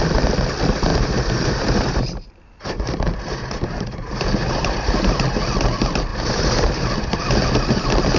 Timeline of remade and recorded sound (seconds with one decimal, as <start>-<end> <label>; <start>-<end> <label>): 0.0-0.9 recorded; 0.9-5.3 remade; 5.3-6.1 recorded; 6.1-7.2 remade; 7.2-8.2 recorded